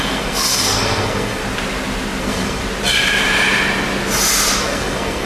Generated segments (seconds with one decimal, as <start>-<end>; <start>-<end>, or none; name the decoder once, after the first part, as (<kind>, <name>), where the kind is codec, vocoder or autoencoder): 0.0-1.4 (codec, SNAC); 2.2-2.6; 4.6-5.3